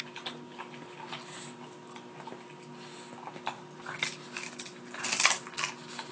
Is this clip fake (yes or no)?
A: no